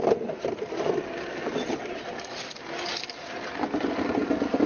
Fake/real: real